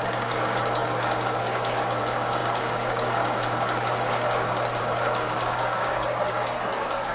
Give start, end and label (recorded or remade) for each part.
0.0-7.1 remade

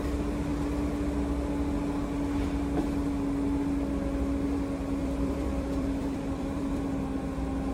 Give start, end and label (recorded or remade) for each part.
0.0-5.0 recorded; 5.0-6.8 remade; 6.8-7.7 recorded

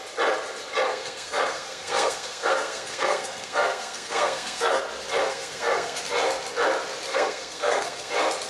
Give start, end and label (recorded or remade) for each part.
0.0-0.9 recorded; 0.9-4.8 remade; 4.8-5.3 recorded; 5.3-6.0 remade; 6.0-7.1 recorded; 7.1-8.1 remade; 8.1-8.5 recorded

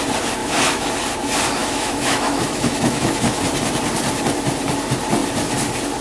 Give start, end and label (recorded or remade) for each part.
0.0-0.4 recorded; 0.4-0.9 remade; 0.9-1.6 recorded; 1.6-3.4 remade; 3.4-6.0 recorded